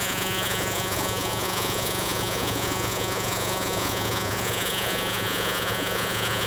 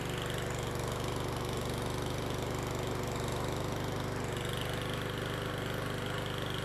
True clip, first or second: second